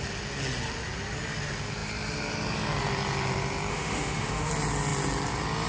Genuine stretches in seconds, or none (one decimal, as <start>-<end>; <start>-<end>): 0.0-3.7; 4.5-5.7